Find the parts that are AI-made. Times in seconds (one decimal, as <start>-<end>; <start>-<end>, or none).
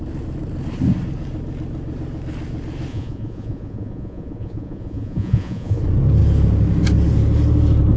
2.9-5.8